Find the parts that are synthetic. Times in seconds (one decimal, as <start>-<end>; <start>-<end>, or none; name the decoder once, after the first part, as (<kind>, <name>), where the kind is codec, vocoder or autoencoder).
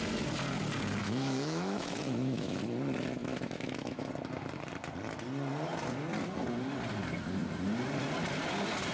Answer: 1.0-2.6 (autoencoder, DAC-VAE); 3.2-4.1